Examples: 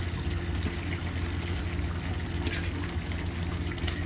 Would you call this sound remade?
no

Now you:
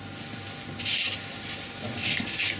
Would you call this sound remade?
no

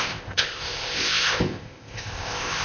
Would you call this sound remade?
yes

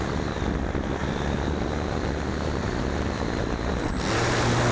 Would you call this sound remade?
no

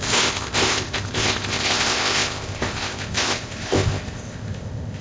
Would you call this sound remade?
yes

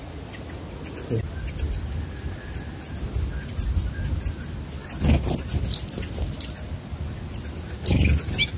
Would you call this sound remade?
no